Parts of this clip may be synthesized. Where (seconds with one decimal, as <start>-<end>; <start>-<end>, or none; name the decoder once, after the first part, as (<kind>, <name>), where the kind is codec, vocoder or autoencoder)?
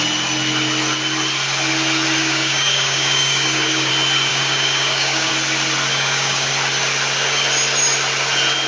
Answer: 2.2-3.9 (codec, DAC); 4.3-5.3; 5.9-6.5